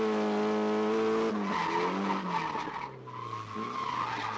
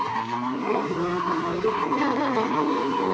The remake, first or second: second